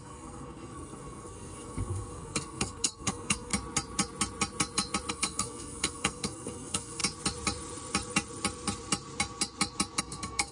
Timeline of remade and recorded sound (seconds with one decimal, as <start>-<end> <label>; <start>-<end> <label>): 0.0-3.5 remade; 3.5-5.1 recorded; 5.1-7.0 remade; 7.0-10.0 recorded; 10.0-10.5 remade